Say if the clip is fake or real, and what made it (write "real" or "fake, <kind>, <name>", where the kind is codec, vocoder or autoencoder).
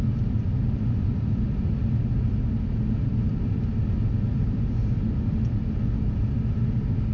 real